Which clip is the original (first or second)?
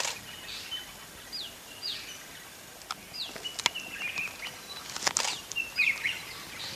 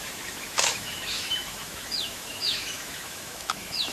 first